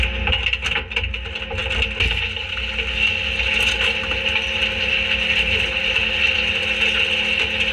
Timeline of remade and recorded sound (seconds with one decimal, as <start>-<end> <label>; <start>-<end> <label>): 0.0-7.7 recorded